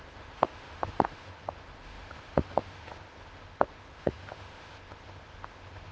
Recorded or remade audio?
remade